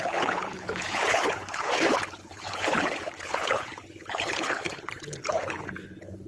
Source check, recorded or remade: remade